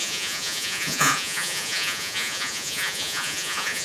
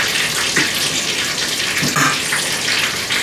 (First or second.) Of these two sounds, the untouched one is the second